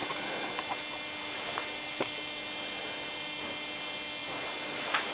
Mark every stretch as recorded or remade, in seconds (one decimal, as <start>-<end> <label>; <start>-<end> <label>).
0.0-5.1 recorded